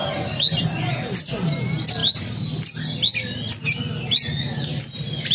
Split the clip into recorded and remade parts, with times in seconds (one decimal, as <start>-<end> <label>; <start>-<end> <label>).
0.0-5.3 recorded